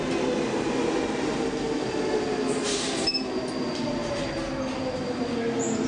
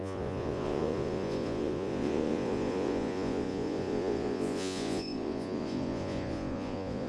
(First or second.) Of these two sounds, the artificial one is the second